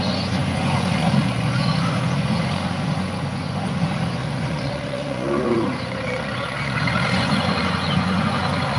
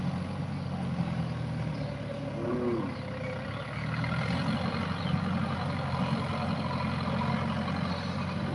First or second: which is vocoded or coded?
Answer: first